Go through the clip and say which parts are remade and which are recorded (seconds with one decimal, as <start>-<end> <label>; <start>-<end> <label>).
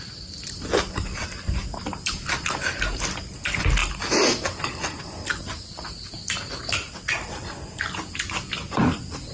0.0-9.3 recorded